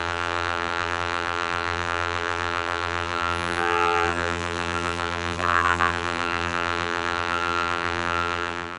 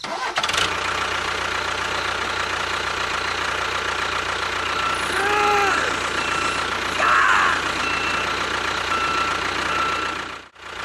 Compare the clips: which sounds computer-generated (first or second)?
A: first